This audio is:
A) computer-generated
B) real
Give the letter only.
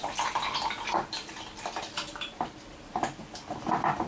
B